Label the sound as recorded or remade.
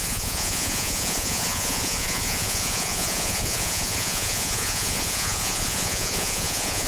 remade